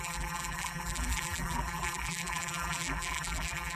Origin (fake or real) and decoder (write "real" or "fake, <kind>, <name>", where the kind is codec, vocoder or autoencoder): fake, vocoder, BigVGAN v2